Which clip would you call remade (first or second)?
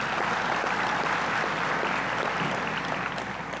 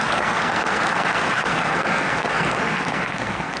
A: second